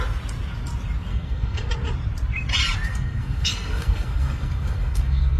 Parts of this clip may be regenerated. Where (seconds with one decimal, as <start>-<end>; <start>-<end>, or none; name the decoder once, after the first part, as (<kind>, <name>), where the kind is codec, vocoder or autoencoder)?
1.1-1.7 (codec, SNAC); 2.9-5.4